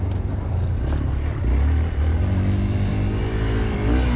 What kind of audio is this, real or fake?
real